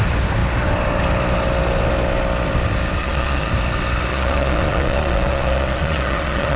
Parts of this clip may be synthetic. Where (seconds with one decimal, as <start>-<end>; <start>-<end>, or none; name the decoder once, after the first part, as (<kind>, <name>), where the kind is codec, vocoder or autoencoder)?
3.0-3.5 (vocoder, Vocos); 4.1-6.6